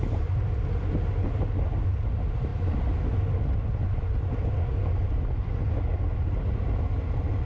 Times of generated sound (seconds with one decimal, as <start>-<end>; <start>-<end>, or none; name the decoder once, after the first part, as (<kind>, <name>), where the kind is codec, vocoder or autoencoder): none